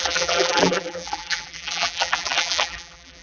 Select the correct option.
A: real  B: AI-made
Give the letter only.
B